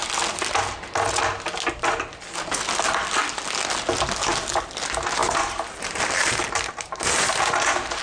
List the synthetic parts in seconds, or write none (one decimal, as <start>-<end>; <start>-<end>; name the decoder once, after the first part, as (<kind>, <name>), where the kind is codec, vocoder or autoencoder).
5.2-8.0 (vocoder, BigVGAN v2)